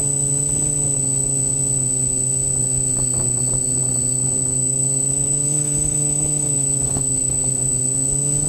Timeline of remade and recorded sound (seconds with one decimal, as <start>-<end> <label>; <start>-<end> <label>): 0.0-4.5 recorded; 4.5-7.8 remade; 7.8-8.5 recorded